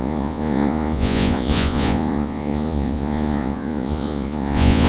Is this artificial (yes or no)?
yes